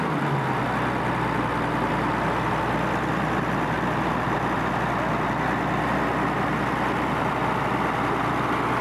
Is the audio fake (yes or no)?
no